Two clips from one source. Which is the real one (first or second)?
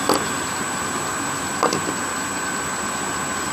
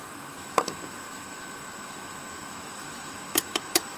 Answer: first